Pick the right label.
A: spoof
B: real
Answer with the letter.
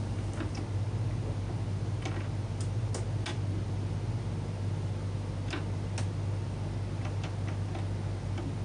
B